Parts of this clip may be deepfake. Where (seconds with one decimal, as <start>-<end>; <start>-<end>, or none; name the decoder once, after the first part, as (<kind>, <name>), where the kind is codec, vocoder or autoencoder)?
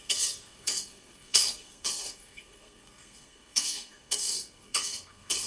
0.0-5.5 (codec, SNAC)